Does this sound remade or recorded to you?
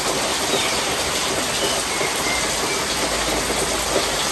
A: recorded